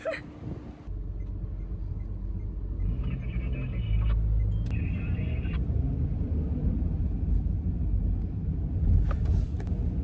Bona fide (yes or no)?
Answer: yes